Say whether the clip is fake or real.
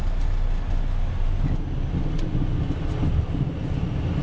real